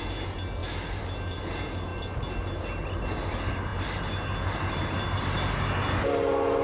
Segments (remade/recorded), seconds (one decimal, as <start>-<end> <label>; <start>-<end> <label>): 0.0-6.6 recorded